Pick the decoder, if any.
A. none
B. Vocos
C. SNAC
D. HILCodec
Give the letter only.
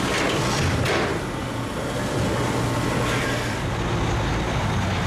A